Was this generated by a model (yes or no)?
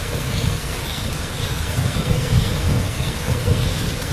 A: yes